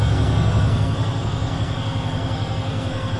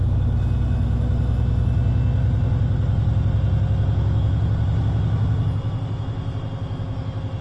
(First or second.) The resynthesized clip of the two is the first